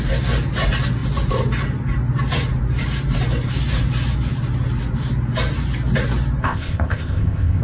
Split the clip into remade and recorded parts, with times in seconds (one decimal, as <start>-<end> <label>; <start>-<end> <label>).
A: 0.0-6.4 recorded; 6.4-7.6 remade